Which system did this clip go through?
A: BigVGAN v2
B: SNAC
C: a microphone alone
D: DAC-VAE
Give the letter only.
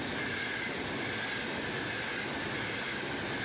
C